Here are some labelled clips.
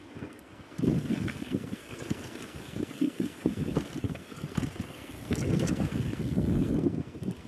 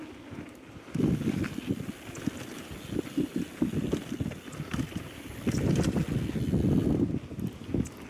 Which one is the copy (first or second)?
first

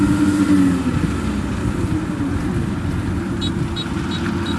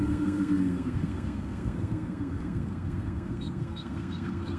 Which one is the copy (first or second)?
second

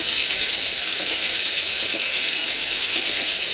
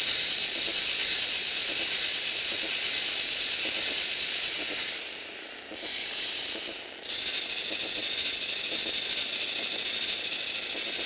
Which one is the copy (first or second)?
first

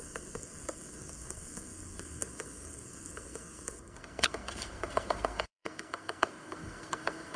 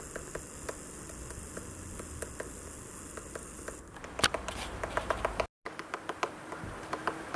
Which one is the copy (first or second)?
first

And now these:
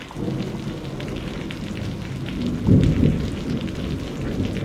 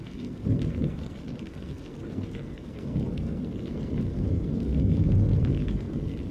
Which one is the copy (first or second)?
second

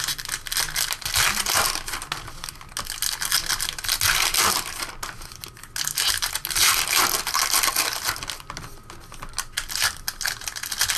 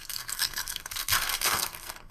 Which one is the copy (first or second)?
second